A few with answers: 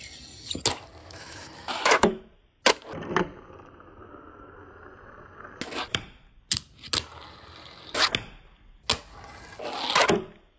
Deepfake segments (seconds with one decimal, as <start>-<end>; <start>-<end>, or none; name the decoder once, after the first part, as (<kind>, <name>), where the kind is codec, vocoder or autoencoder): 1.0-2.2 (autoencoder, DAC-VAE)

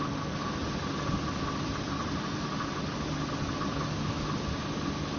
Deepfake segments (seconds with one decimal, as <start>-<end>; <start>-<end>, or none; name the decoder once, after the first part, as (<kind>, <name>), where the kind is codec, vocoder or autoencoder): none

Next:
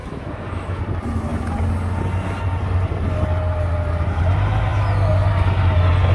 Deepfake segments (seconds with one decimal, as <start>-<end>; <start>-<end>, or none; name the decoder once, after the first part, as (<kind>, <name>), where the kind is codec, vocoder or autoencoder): 0.0-0.8 (autoencoder, DAC-VAE)